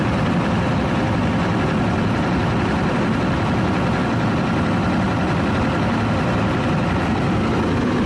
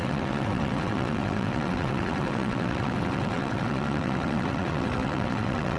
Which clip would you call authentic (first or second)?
first